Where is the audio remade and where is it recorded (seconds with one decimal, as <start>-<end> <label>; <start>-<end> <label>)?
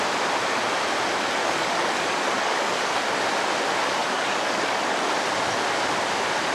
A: 0.0-1.4 recorded; 1.4-2.9 remade; 2.9-4.0 recorded; 4.0-5.1 remade; 5.1-6.5 recorded